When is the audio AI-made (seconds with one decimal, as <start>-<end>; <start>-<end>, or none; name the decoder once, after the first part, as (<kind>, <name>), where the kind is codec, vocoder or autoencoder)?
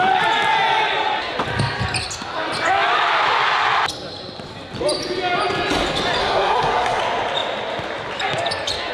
6.2-7.0 (codec, SNAC)